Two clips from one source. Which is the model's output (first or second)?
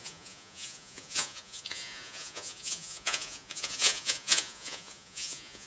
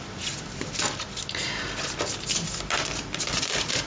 first